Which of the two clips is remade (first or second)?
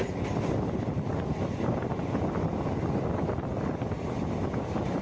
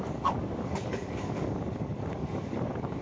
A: second